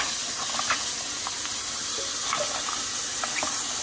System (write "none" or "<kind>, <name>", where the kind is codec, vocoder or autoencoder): none